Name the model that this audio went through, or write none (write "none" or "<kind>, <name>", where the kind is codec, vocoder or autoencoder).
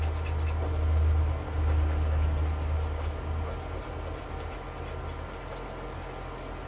none